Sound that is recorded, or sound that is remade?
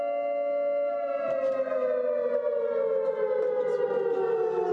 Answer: recorded